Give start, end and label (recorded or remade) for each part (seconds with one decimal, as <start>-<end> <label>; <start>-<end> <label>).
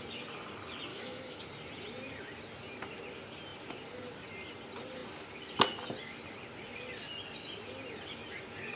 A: 0.0-0.9 recorded; 0.9-1.4 remade; 1.4-8.8 recorded